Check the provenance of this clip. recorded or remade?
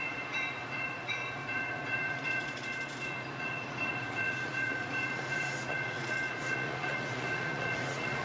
remade